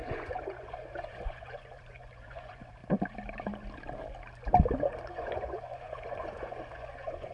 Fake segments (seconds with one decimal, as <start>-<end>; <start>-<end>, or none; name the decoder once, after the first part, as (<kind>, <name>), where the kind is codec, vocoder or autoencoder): 0.0-2.8 (vocoder, Vocos); 5.1-7.3

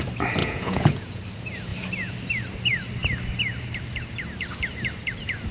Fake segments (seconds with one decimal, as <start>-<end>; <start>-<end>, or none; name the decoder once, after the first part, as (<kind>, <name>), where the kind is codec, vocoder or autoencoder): 0.4-1.2 (vocoder, Vocos)

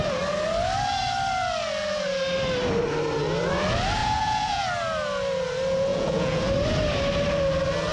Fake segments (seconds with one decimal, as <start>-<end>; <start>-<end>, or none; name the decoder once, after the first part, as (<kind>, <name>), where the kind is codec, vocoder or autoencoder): 4.0-4.6 (vocoder, Vocos); 5.9-6.5

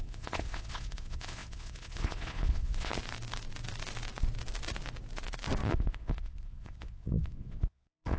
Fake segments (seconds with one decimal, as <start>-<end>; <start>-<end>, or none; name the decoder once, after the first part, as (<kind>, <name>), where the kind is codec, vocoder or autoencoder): 0.0-2.9 (vocoder, Vocos); 5.7-8.2

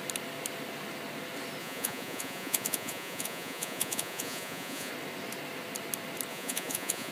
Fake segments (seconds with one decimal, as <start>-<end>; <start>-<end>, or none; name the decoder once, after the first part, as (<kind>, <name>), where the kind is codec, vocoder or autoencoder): 1.6-4.9 (vocoder, Vocos); 6.3-7.1

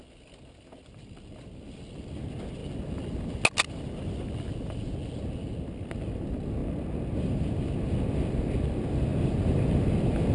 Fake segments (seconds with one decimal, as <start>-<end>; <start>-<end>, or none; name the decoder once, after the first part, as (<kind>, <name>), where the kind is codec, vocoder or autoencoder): none

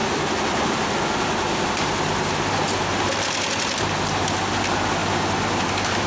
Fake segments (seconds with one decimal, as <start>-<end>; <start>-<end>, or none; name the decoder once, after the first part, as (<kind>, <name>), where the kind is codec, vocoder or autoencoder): none

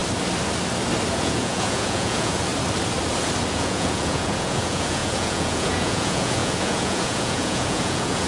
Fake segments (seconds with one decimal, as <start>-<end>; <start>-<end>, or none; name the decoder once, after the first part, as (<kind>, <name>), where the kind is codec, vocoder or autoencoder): 1.1-2.5 (vocoder, Vocos); 3.5-8.3